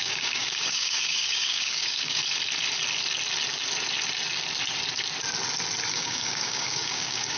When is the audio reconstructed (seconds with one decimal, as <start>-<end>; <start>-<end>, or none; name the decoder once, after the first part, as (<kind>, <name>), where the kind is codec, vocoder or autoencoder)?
0.0-2.2 (codec, DAC); 5.9-7.4